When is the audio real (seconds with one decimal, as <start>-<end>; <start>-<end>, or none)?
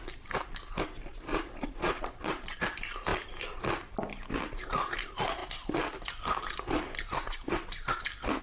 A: 0.0-1.3; 2.6-8.4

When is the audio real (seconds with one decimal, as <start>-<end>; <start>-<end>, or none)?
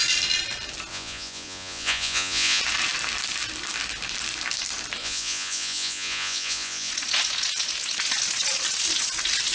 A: 0.0-0.9; 2.6-5.0; 6.9-9.5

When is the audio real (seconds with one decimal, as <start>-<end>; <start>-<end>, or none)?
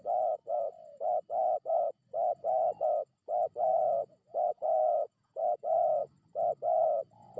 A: 0.0-3.7; 6.1-7.4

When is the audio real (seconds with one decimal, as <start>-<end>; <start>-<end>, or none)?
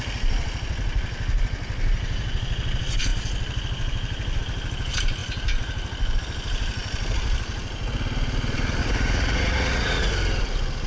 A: 0.0-8.8; 10.1-10.9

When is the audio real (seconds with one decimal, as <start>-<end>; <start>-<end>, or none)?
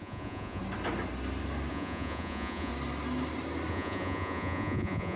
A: 0.6-1.7; 2.7-3.7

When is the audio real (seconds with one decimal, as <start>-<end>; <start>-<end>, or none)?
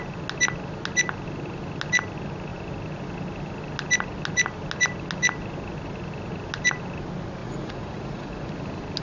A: 0.0-7.4; 8.5-9.0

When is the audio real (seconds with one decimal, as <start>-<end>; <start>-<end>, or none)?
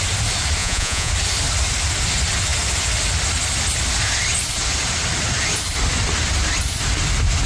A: 0.0-0.6; 1.1-7.5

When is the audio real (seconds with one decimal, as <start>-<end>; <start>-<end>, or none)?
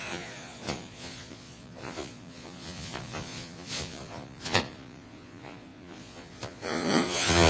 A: none